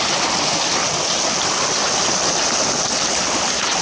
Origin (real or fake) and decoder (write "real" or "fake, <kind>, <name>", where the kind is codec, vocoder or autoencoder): real